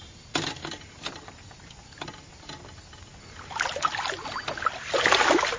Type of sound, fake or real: real